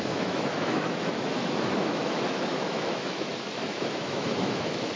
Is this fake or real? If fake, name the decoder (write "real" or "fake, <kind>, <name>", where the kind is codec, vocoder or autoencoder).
fake, autoencoder, DAC-VAE